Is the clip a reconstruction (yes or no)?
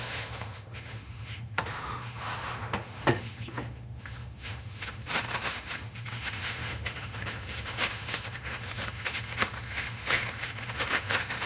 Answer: yes